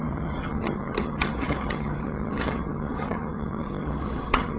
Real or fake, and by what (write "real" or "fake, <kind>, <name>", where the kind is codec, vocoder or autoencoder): fake, vocoder, HiFi-GAN